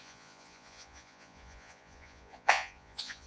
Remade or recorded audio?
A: remade